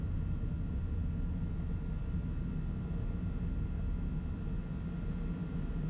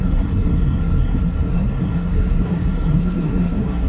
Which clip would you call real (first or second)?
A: first